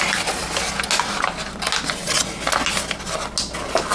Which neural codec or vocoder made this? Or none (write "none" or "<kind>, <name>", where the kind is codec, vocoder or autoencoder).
none